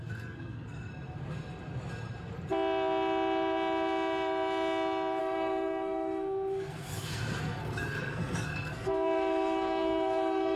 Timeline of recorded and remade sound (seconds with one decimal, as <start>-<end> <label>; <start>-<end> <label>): 0.0-0.9 remade; 0.9-5.2 recorded; 5.2-10.6 remade